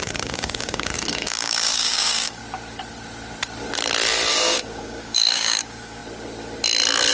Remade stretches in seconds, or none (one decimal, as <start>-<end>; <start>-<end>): 0.0-2.4; 4.3-6.0